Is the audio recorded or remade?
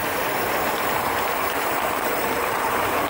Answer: remade